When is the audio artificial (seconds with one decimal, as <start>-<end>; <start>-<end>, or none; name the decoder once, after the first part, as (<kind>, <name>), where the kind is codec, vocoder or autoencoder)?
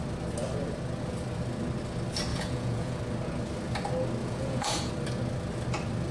2.3-3.0 (vocoder, Vocos); 4.2-4.9